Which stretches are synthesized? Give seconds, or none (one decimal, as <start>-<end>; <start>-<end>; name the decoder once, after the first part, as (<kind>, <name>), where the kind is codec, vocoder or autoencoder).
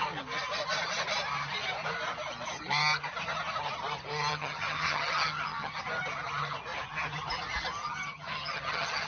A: 4.3-5.8 (vocoder, HiFi-GAN); 7.8-9.1